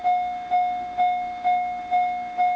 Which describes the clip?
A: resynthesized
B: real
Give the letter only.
A